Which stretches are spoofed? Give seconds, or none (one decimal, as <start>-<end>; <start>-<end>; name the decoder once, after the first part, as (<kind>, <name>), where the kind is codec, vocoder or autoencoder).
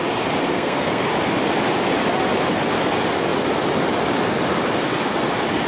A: 0.5-1.1 (codec, SNAC)